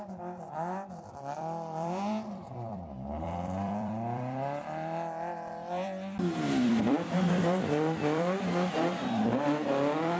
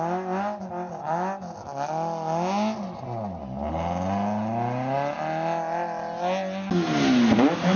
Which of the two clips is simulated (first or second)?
first